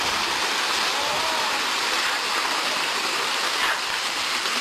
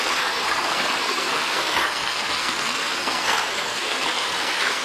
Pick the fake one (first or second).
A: second